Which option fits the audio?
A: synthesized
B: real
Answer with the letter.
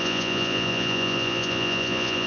A